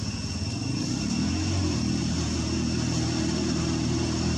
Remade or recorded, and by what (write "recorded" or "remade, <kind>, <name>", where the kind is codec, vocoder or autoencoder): recorded